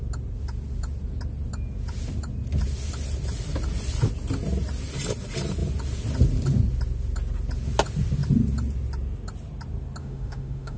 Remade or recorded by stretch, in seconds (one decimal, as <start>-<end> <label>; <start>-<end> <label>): 0.0-10.0 recorded; 10.0-10.8 remade